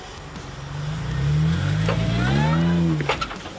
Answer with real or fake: real